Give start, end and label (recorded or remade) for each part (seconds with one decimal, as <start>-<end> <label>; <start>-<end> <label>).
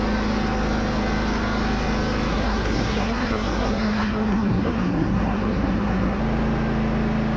0.0-2.3 recorded; 2.3-6.2 remade; 6.2-7.4 recorded